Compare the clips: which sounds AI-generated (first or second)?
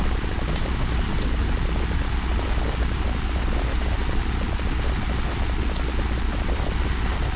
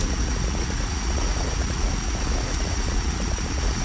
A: second